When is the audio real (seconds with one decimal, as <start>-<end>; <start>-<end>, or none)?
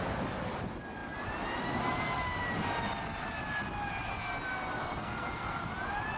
0.0-4.8; 5.6-6.2